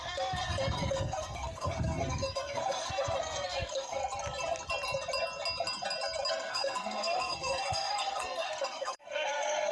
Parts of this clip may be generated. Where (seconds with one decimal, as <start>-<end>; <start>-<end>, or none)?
0.0-4.0; 6.3-9.7